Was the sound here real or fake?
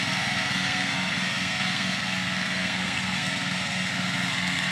fake